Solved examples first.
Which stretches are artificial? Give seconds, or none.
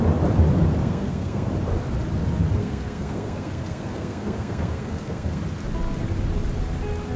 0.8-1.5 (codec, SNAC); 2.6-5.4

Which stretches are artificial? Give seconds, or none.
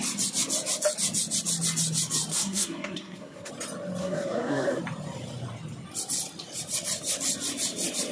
2.3-3.5 (codec, SNAC); 4.0-4.8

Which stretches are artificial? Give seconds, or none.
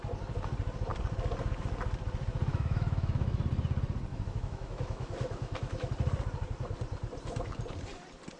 2.5-3.4 (autoencoder, DAC-VAE); 4.1-5.9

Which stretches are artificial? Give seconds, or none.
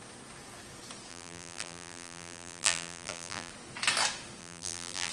1.1-3.5 (vocoder, BigVGAN v2); 4.4-5.1